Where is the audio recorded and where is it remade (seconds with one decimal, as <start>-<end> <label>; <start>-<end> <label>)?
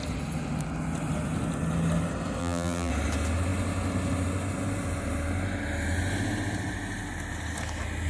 0.0-2.4 recorded; 2.4-2.9 remade; 2.9-8.1 recorded